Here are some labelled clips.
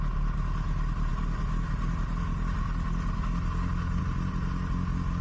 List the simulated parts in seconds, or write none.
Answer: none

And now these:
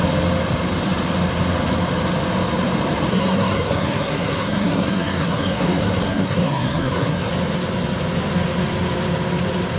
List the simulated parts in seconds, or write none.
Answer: 3.1-7.3 (codec, SNAC)

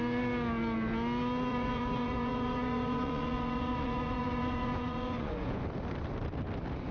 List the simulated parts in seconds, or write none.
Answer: 1.5-5.6 (vocoder, Vocos)

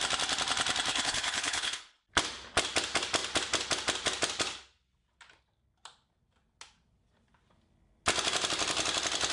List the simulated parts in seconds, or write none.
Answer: 0.9-2.0 (codec, HILCodec)

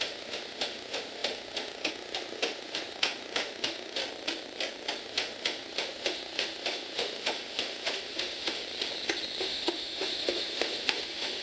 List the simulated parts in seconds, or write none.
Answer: 0.0-4.0 (autoencoder, DAC-VAE); 5.0-8.6; 9.4-11.4

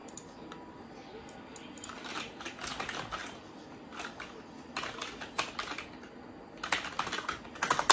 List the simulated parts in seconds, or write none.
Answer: none

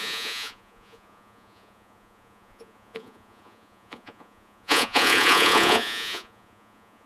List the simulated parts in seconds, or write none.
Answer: 0.0-7.1 (vocoder, Vocos)

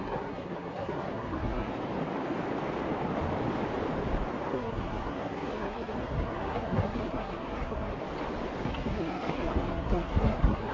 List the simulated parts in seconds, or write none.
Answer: 0.0-1.7 (codec, SNAC); 4.5-7.9; 8.6-10.7